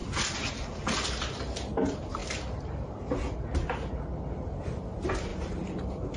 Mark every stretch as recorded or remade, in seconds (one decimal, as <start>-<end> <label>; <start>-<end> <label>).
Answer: 0.0-0.5 remade; 0.5-5.3 recorded; 5.3-6.2 remade